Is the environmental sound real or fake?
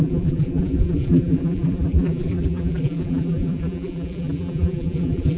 fake